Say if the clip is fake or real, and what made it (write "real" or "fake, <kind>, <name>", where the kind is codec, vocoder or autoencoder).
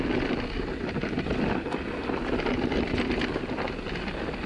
real